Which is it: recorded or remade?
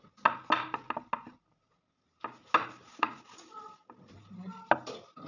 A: recorded